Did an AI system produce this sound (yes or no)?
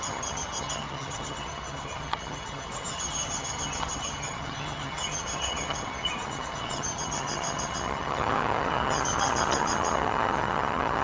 yes